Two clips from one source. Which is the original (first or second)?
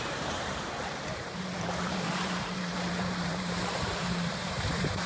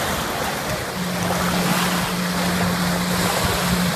second